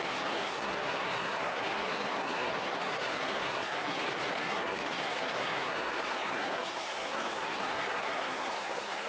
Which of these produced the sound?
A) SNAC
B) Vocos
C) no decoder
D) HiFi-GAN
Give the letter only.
A